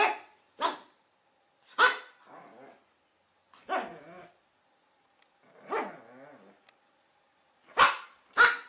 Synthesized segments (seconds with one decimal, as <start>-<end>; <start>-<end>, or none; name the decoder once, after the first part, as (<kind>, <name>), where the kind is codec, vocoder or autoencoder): none